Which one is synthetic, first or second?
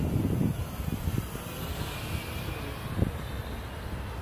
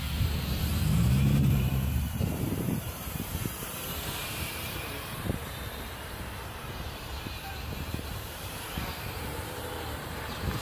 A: second